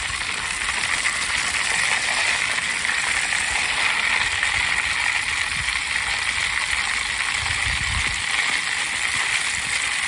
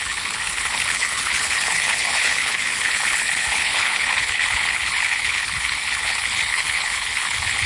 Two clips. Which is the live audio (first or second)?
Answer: first